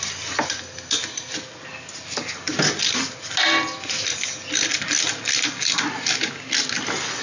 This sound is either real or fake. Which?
real